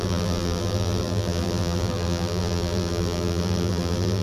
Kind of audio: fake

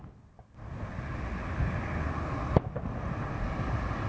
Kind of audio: real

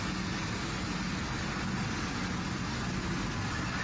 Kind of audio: real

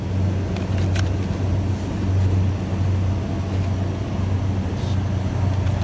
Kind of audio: real